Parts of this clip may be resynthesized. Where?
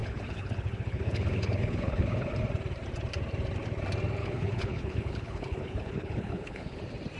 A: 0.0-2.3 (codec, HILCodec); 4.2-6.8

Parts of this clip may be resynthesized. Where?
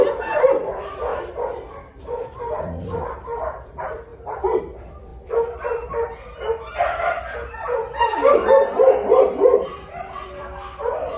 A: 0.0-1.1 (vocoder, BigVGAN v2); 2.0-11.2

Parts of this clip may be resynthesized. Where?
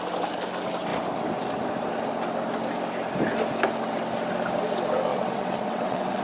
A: 5.1-6.2 (vocoder, WaveNeXt)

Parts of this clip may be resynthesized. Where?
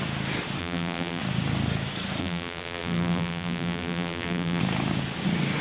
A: 0.6-1.2 (vocoder, BigVGAN v2); 2.2-4.6